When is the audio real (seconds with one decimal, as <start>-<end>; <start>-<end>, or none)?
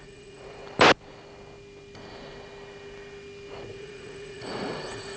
0.6-3.7